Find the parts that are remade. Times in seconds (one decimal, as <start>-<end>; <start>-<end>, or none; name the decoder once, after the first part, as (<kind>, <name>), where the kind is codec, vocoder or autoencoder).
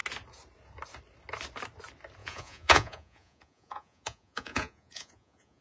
2.2-5.6 (vocoder, Vocos)